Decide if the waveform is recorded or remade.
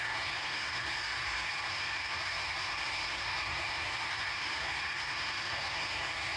remade